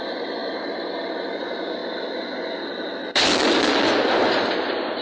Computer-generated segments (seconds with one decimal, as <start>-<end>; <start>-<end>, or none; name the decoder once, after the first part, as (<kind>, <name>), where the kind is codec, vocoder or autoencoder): none